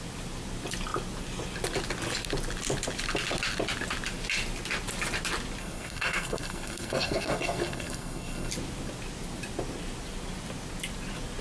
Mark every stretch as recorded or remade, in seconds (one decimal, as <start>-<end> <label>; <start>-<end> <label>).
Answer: 0.0-5.6 recorded; 5.6-8.5 remade; 8.5-11.4 recorded